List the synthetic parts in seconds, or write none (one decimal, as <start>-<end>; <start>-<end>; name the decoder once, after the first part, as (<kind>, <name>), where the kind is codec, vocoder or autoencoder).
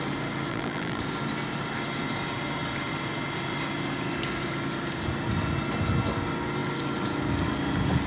0.5-1.0 (vocoder, BigVGAN v2)